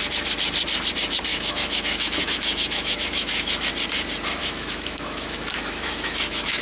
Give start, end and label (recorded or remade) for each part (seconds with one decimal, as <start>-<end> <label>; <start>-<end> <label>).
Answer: 0.0-1.3 recorded; 1.3-3.7 remade; 3.7-4.4 recorded; 4.4-6.6 remade